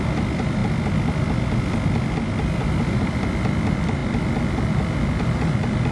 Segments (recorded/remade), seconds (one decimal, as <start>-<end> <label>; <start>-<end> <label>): 0.0-5.9 recorded